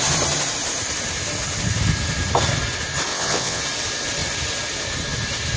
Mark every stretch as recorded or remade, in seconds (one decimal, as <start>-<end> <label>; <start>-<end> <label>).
0.0-3.1 recorded; 3.1-3.6 remade; 3.6-5.6 recorded